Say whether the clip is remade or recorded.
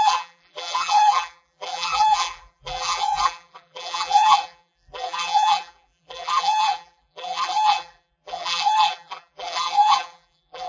remade